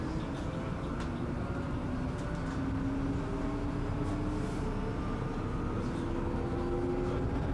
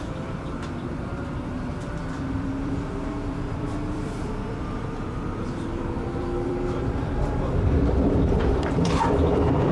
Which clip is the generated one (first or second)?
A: second